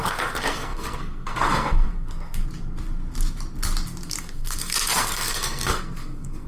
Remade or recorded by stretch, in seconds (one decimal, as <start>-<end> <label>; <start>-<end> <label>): 0.0-2.4 remade; 2.4-4.2 recorded; 4.2-6.5 remade